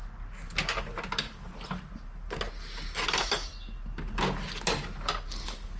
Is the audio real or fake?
real